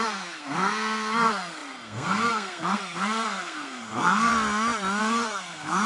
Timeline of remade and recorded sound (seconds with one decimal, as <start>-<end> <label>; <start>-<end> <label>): 0.0-4.3 remade; 4.3-5.0 recorded; 5.0-5.9 remade